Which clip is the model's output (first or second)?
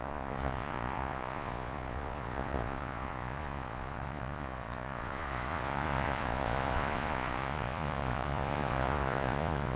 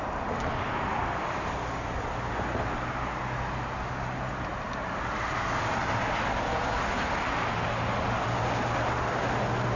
first